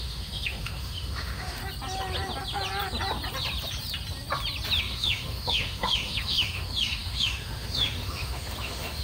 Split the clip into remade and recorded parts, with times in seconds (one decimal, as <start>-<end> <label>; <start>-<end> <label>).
0.0-1.6 remade; 1.6-4.8 recorded; 4.8-9.0 remade